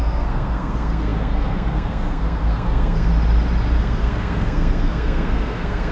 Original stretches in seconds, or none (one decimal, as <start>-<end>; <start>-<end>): 3.1-3.8